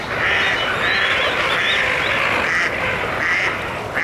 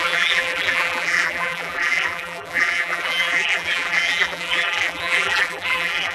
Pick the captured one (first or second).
first